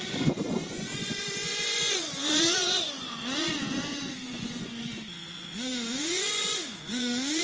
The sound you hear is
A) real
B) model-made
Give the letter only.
B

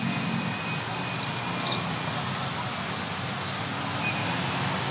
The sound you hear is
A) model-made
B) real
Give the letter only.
B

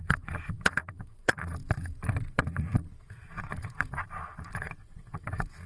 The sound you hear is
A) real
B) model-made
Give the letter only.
B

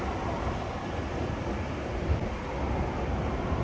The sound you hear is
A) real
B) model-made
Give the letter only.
A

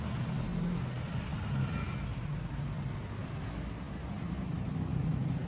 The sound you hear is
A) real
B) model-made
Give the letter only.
A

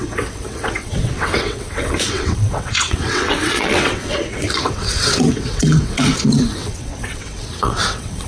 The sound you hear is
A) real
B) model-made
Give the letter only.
B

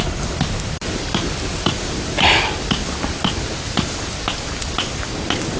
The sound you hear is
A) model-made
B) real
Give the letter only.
B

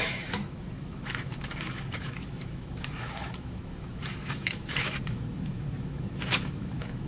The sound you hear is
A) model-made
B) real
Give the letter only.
A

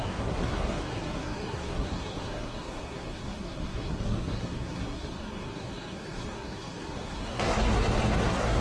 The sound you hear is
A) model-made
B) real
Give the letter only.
A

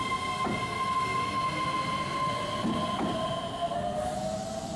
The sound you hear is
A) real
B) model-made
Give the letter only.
A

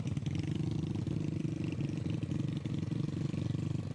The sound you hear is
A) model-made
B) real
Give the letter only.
B